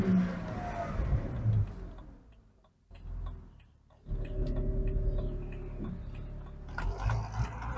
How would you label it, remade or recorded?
recorded